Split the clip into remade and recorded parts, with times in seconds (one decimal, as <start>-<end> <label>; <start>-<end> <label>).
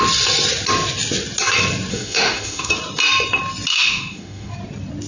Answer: 0.0-1.9 recorded; 1.9-2.7 remade; 2.7-3.7 recorded; 3.7-4.5 remade; 4.5-5.1 recorded